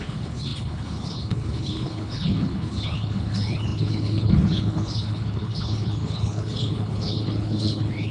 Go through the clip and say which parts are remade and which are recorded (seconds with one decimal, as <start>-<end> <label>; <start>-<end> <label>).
0.0-8.1 remade